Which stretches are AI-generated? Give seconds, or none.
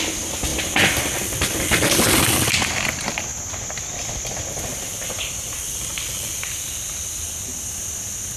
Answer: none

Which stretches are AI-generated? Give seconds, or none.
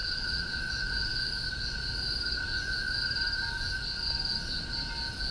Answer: 0.0-0.6